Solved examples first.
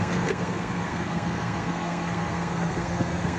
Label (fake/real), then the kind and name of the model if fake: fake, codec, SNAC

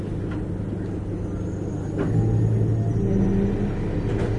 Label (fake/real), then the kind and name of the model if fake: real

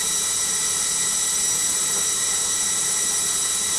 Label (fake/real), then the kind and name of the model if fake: real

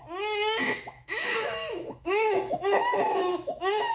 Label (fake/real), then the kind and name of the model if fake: fake, autoencoder, DAC-VAE